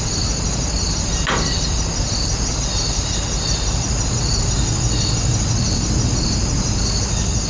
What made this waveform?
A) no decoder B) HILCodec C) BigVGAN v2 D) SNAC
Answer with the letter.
A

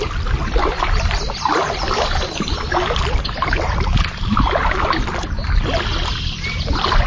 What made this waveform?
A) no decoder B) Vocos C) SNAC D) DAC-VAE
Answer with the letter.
A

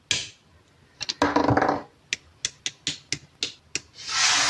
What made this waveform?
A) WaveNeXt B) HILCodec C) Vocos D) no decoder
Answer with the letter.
D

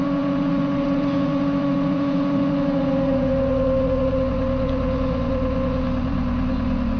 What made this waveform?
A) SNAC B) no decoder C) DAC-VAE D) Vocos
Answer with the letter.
D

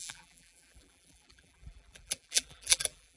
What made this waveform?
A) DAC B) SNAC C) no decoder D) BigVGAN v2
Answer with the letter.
D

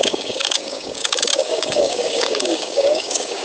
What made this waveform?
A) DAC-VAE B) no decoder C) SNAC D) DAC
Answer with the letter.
D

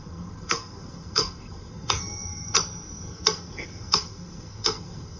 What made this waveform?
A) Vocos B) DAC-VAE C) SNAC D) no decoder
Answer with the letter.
C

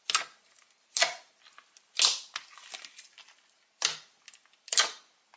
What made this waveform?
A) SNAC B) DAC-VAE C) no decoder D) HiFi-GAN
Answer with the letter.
C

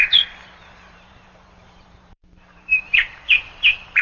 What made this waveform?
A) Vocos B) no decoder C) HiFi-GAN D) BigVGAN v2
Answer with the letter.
D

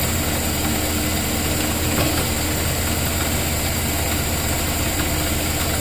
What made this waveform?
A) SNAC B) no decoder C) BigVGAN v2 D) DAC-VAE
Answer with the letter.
B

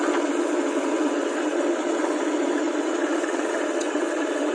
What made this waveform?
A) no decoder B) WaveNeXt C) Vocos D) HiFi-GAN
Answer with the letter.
B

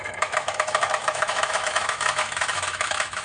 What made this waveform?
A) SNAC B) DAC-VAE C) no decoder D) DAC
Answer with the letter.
B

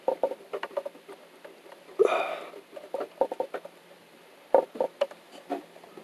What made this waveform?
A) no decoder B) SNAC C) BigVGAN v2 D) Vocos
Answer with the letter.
A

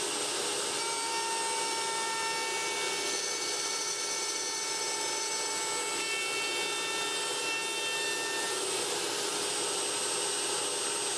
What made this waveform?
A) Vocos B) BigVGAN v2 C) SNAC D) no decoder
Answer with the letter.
D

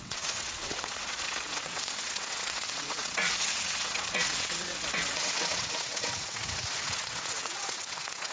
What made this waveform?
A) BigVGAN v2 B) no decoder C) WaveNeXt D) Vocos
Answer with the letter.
C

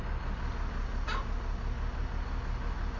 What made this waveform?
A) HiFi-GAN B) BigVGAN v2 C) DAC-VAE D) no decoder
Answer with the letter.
D